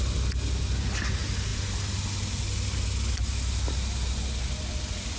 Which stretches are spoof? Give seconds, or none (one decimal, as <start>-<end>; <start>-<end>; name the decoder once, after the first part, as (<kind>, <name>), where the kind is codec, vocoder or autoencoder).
none